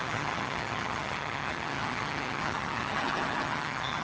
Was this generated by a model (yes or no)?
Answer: yes